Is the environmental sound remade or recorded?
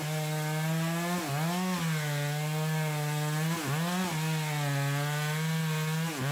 recorded